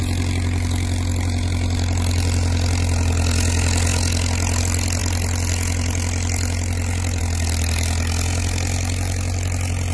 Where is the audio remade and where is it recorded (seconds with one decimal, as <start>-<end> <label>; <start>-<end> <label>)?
0.0-9.9 recorded